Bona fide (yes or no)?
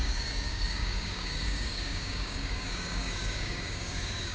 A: no